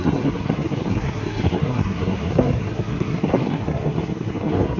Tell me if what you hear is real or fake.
fake